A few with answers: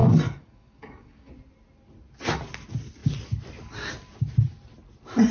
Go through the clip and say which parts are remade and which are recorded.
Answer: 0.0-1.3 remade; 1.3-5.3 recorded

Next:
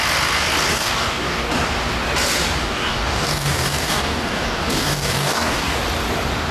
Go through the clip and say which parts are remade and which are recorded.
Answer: 0.0-0.7 recorded; 0.7-1.5 remade; 1.5-2.6 recorded; 2.6-5.8 remade; 5.8-6.5 recorded

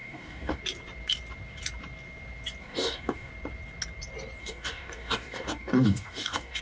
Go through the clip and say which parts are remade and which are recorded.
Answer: 0.0-0.6 remade; 0.6-2.6 recorded; 2.6-3.3 remade; 3.3-4.4 recorded; 4.4-6.6 remade

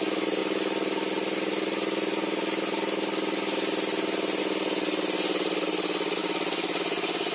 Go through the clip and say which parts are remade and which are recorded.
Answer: 0.0-7.3 recorded

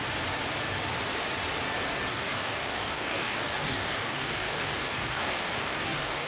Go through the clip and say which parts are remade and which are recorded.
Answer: 0.0-2.1 recorded; 2.1-6.3 remade